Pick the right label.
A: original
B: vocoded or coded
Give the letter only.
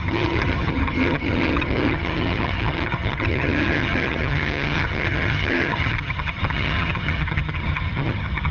B